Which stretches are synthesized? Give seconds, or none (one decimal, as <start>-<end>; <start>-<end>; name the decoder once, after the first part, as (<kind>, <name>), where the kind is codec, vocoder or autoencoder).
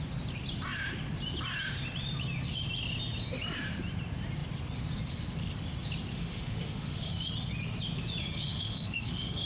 6.1-7.3 (autoencoder, DAC-VAE); 8.2-9.5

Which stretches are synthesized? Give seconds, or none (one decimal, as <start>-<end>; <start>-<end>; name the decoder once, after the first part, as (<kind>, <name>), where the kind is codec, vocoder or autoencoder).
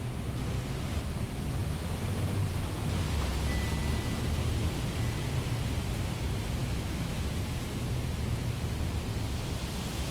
6.6-7.3 (autoencoder, DAC-VAE)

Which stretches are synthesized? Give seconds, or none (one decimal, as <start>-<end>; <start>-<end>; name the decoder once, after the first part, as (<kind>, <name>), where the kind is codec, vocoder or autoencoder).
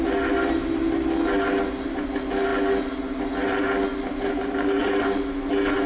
none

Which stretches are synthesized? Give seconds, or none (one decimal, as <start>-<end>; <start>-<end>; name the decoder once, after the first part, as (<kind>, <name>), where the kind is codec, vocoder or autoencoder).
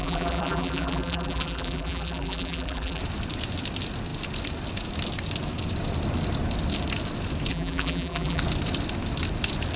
0.0-3.0 (vocoder, BigVGAN v2); 7.5-8.4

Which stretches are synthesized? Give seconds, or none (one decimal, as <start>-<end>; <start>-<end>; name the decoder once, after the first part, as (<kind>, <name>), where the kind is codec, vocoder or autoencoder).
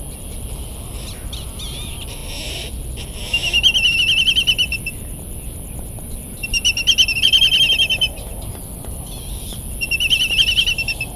none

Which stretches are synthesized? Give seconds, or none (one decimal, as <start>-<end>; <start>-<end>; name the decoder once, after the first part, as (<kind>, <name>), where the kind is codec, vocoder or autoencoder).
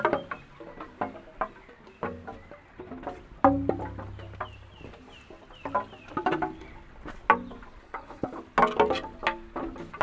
7.8-8.4 (codec, HILCodec)